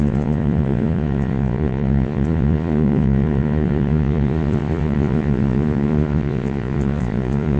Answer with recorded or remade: remade